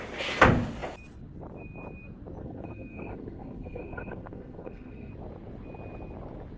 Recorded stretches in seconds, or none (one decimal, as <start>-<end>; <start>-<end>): 0.0-2.4; 5.1-6.6